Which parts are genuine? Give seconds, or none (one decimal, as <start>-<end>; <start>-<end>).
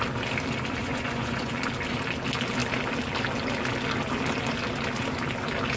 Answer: 0.0-0.8; 1.5-5.8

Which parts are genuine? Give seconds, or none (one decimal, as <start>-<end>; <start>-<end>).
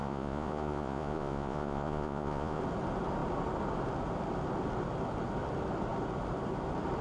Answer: 2.6-7.0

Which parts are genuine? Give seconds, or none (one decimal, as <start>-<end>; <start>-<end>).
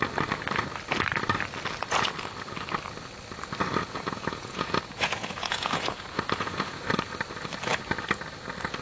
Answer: 0.0-3.8; 6.9-8.8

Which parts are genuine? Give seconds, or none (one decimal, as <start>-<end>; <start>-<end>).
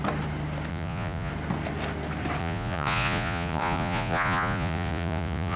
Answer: 0.0-0.7; 1.3-2.4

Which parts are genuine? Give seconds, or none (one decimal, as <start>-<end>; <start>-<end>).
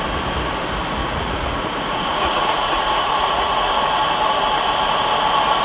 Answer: 0.0-1.0; 3.7-5.6